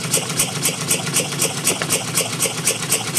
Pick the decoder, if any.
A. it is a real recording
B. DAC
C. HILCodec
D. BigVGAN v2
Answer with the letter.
A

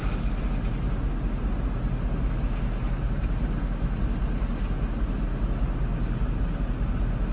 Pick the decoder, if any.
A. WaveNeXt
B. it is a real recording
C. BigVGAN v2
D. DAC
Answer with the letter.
B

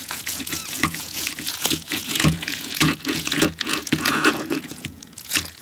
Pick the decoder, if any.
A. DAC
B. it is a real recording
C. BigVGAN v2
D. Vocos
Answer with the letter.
D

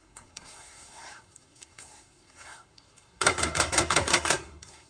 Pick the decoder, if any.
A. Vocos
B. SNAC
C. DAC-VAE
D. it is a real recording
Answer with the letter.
B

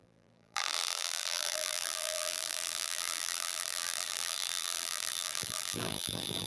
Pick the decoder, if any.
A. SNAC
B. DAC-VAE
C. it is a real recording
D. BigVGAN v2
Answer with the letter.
D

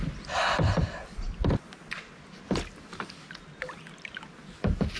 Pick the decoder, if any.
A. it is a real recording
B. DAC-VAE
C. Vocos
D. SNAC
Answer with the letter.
A